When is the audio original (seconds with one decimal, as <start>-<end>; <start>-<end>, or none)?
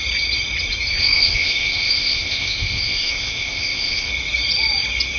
0.0-1.0; 4.1-5.2